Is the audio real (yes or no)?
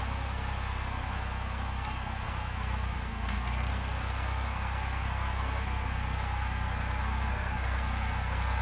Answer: no